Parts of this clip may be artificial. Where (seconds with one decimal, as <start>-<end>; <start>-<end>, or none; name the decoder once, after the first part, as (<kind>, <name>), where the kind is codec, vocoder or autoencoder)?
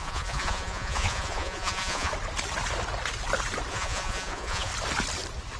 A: 0.0-2.1 (vocoder, Vocos); 3.7-4.7